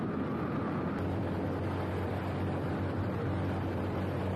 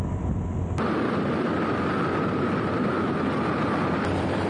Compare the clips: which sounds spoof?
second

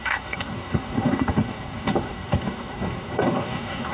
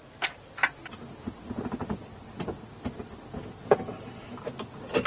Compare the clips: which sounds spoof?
first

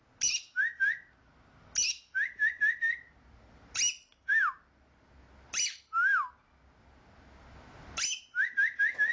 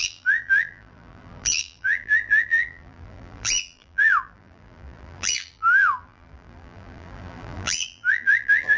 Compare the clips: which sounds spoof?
second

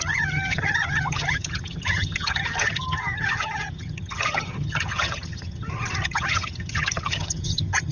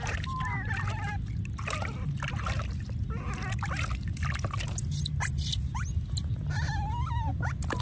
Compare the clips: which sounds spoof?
first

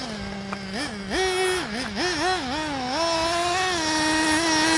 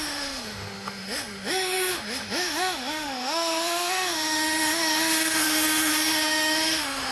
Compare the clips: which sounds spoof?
second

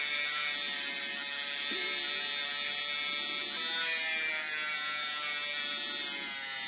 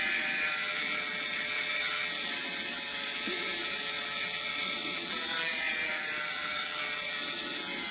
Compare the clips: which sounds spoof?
second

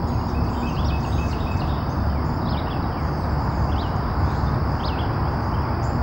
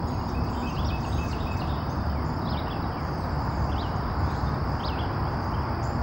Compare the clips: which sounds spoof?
second